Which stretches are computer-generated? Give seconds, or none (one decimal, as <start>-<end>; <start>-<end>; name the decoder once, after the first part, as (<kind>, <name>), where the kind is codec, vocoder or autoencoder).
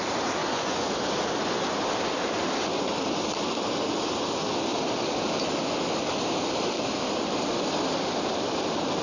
0.4-0.9 (vocoder, Vocos)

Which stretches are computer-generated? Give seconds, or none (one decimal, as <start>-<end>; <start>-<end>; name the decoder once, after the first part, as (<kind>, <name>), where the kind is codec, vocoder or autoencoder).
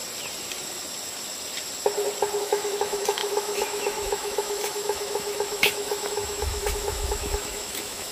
2.4-8.1 (autoencoder, DAC-VAE)